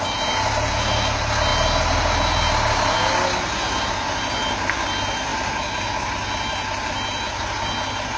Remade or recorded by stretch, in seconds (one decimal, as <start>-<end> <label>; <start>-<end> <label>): 0.0-8.2 recorded